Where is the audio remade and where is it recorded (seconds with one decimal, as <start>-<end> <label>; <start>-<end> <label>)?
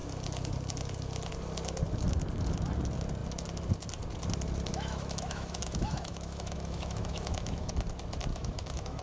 0.0-4.7 recorded; 4.7-7.7 remade; 7.7-8.3 recorded; 8.3-9.0 remade